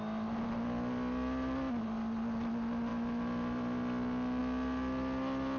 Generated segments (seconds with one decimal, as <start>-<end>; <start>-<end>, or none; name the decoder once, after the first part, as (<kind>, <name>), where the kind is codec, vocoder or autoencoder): none